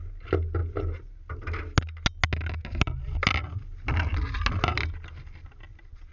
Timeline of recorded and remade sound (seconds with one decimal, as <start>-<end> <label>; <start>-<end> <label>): 0.0-6.1 recorded